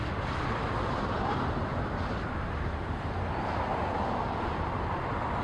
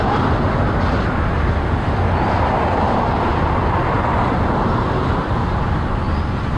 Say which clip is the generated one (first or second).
first